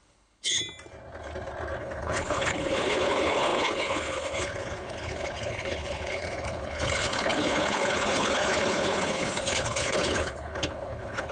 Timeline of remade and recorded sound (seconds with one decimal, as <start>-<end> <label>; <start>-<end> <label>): 0.0-0.6 remade; 0.6-1.8 recorded; 1.8-11.3 remade